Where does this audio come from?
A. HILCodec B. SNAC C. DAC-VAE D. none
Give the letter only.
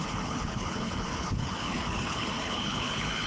A